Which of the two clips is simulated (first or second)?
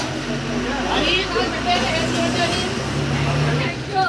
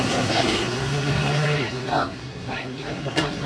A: second